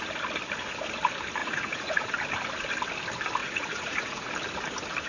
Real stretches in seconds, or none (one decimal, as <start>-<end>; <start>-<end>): 0.0-1.4; 2.1-3.4; 4.3-5.1